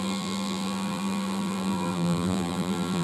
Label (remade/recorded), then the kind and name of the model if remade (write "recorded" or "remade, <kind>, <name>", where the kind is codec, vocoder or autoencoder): remade, vocoder, BigVGAN v2